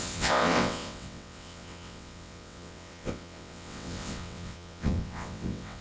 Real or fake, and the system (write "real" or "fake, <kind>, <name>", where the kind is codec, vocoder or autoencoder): fake, vocoder, WaveNeXt